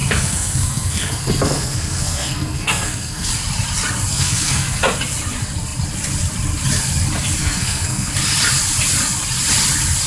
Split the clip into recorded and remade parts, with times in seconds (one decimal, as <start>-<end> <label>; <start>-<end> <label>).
0.0-3.3 remade; 3.3-4.1 recorded; 4.1-4.8 remade; 4.8-7.4 recorded; 7.4-8.1 remade; 8.1-10.1 recorded